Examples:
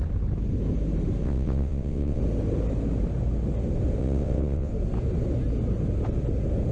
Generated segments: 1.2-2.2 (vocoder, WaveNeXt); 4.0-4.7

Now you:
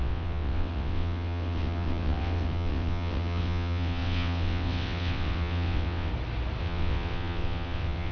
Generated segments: 0.0-6.1 (vocoder, WaveNeXt); 6.6-8.1

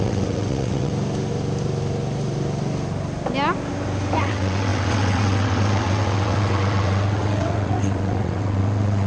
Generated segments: 0.0-0.9 (vocoder, WaveNeXt); 4.2-9.1

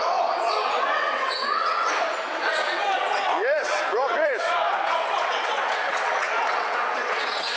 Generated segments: 0.0-7.6 (vocoder, WaveNeXt)

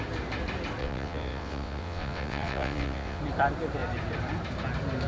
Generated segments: 0.8-3.2 (vocoder, WaveNeXt)

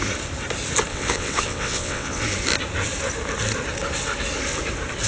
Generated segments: 0.9-2.2 (vocoder, WaveNeXt)

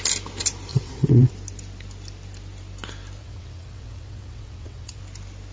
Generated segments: 0.7-1.3 (vocoder, WaveNeXt); 3.2-5.0